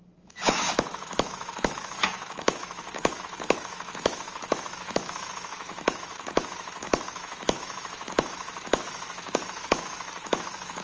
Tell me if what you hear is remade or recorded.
remade